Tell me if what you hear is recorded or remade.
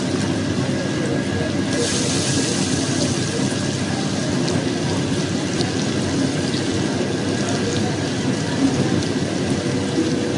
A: recorded